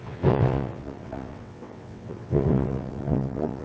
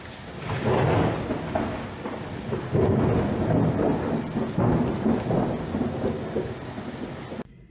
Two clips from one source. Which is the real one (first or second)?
second